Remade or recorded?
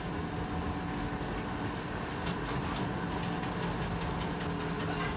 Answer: recorded